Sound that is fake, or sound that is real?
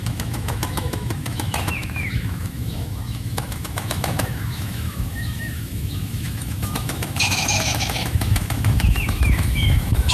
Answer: fake